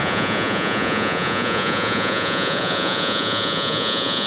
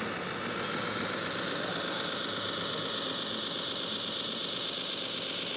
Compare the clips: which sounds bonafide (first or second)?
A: second